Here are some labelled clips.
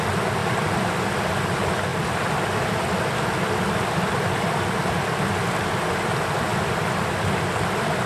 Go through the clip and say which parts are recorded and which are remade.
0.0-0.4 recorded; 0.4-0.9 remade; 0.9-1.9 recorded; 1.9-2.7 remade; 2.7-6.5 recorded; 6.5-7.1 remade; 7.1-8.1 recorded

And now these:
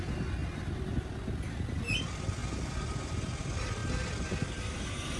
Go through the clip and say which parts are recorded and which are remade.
0.0-5.2 recorded

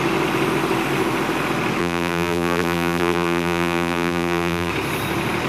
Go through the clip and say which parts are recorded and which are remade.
0.0-1.8 recorded; 1.8-4.7 remade; 4.7-5.5 recorded

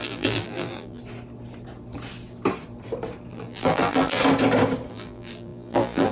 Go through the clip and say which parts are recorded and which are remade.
0.0-1.0 remade; 1.0-3.3 recorded; 3.3-4.2 remade; 4.2-4.9 recorded; 4.9-6.1 remade

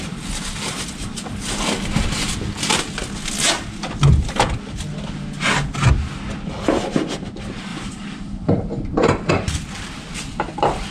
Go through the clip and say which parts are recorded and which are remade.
0.0-10.9 recorded

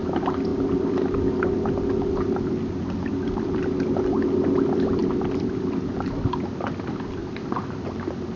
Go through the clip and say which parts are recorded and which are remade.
0.0-5.0 recorded; 5.0-5.8 remade; 5.8-7.2 recorded; 7.2-8.4 remade

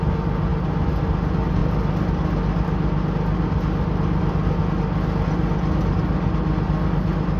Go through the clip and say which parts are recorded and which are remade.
0.0-7.4 recorded

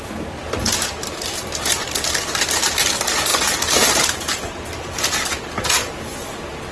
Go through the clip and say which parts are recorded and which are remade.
0.0-3.3 recorded; 3.3-5.2 remade; 5.2-6.7 recorded